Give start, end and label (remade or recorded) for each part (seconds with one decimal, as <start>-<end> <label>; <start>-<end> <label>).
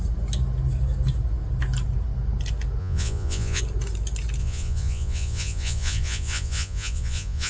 0.0-2.8 recorded; 2.8-3.6 remade; 3.6-4.4 recorded; 4.4-7.5 remade